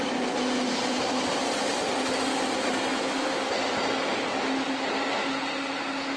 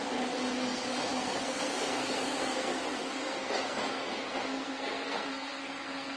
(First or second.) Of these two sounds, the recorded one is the first